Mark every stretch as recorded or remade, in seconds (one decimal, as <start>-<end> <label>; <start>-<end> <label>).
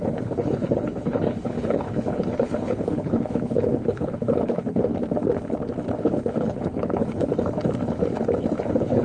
0.0-4.9 remade; 4.9-6.0 recorded; 6.0-7.3 remade; 7.3-8.6 recorded; 8.6-9.0 remade